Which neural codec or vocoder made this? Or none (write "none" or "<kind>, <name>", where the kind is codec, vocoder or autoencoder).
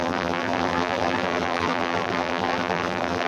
vocoder, BigVGAN v2